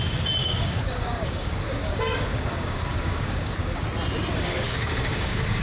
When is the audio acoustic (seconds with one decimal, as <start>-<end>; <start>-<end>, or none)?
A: 0.0-0.4; 3.8-4.3